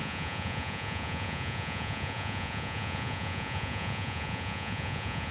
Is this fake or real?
fake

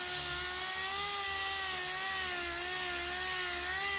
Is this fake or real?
real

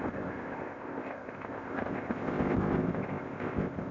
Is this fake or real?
fake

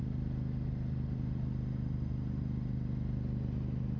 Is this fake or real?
real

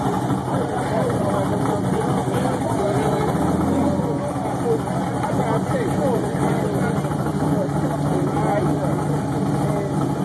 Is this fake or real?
real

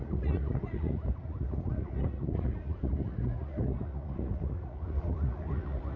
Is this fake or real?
fake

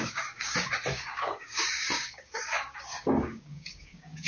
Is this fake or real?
fake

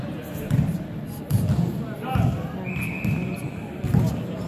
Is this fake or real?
real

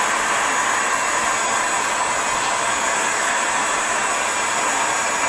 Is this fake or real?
real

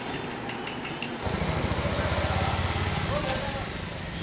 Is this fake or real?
real